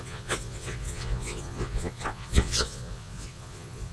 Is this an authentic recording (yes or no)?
no